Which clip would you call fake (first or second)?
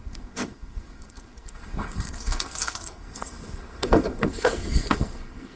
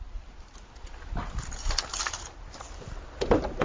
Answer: first